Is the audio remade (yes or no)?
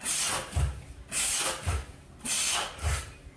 no